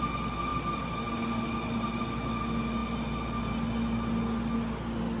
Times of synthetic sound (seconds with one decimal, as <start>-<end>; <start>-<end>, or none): none